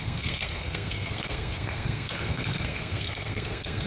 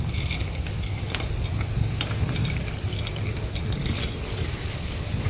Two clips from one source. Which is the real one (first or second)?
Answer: second